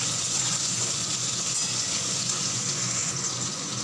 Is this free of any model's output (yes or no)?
no